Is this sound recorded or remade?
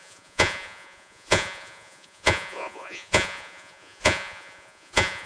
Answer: remade